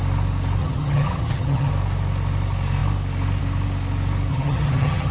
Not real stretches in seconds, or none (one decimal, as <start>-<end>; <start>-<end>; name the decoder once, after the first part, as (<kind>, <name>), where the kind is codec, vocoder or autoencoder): 0.6-1.7 (vocoder, HiFi-GAN); 4.3-5.1